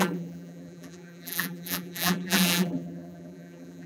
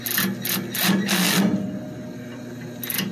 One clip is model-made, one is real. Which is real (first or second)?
second